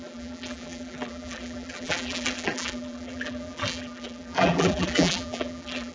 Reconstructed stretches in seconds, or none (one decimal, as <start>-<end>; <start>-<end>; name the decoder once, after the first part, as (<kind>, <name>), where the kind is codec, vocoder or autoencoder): 0.0-5.9 (vocoder, BigVGAN v2)

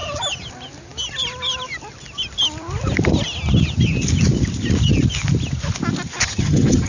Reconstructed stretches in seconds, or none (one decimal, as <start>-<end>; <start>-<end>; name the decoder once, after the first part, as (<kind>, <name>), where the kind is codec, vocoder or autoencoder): 6.2-6.9 (vocoder, HiFi-GAN)

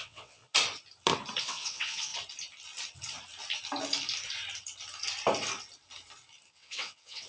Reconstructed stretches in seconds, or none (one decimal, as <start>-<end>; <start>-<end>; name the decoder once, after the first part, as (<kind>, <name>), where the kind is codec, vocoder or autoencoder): 0.0-0.4 (vocoder, WaveNeXt); 1.4-2.1; 6.5-7.3

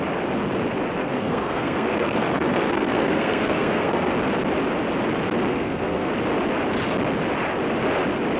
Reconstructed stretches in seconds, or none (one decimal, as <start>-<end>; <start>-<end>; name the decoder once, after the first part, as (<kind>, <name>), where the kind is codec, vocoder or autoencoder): 1.0-4.1 (codec, SNAC); 5.5-6.1